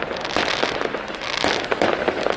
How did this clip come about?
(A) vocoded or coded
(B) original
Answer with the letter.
B